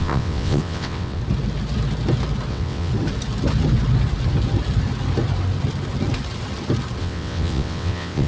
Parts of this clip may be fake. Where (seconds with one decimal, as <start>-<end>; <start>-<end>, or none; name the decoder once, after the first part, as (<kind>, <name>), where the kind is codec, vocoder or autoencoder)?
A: 0.0-1.2 (vocoder, WaveNeXt); 2.5-2.9; 7.0-8.3